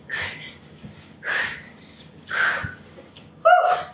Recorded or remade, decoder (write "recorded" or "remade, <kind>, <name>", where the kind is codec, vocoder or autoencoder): remade, codec, DAC